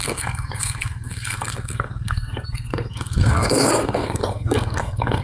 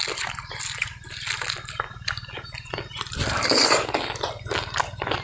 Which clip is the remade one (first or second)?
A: first